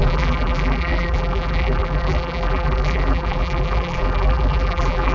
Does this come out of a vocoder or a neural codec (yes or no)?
yes